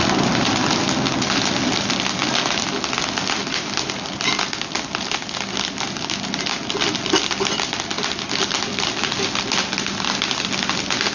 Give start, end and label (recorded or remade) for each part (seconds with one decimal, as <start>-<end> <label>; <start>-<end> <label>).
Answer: 0.0-11.1 recorded